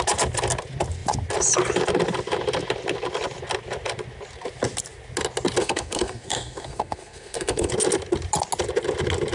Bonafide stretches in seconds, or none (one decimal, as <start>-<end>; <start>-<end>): 0.0-5.6; 7.7-9.3